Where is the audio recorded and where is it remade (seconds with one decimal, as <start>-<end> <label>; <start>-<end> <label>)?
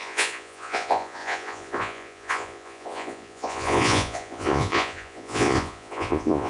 0.0-6.5 remade